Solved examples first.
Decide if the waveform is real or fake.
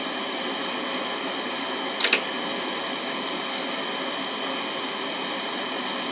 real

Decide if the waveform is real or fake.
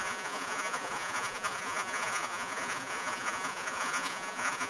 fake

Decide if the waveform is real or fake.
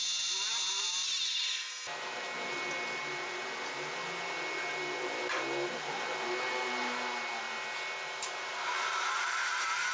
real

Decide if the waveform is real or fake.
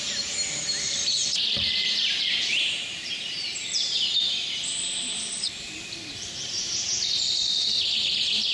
fake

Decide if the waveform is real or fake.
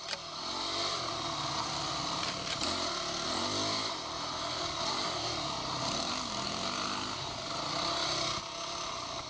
real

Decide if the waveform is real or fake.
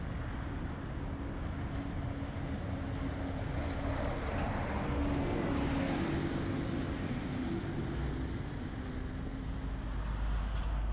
real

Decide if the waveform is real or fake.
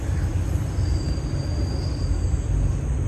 real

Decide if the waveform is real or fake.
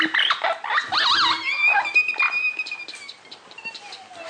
real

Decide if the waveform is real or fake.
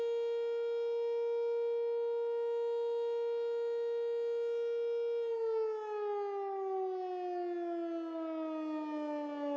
real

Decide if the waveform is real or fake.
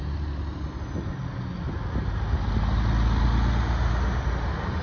real